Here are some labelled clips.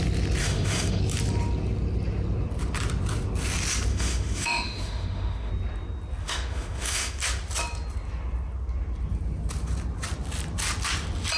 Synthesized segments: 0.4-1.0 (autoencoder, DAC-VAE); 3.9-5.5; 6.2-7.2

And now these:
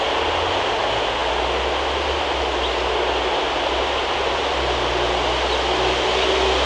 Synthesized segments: none

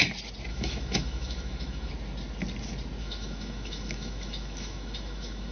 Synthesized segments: 0.5-1.9 (autoencoder, DAC-VAE); 3.0-5.5

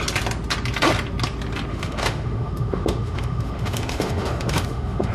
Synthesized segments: 1.7-5.1 (autoencoder, DAC-VAE)

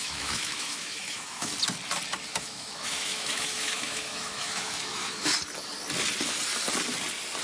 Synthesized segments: 0.0-1.5 (autoencoder, DAC-VAE); 2.3-5.3

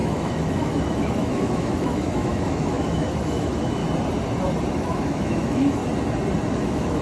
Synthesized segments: 0.0-3.8 (autoencoder, DAC-VAE); 4.7-5.8; 6.5-7.0

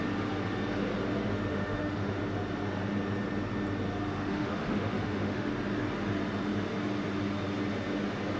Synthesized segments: 1.5-2.2 (autoencoder, DAC-VAE); 4.1-5.5